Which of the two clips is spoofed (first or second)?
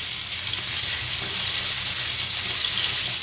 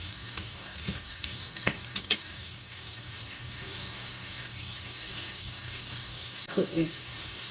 second